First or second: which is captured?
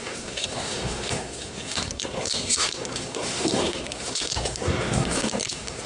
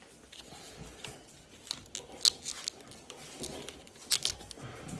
second